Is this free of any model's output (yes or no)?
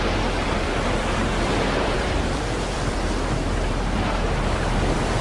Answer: no